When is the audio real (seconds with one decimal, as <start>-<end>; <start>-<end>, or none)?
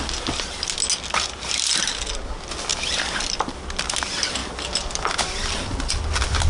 0.0-6.5